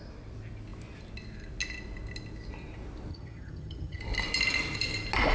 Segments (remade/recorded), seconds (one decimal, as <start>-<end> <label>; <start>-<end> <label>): 0.0-3.1 recorded; 3.1-4.0 remade; 4.0-5.3 recorded